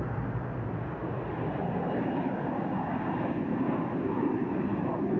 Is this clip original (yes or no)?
yes